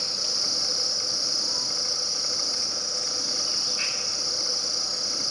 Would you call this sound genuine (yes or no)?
yes